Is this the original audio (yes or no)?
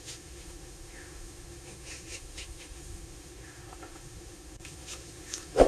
no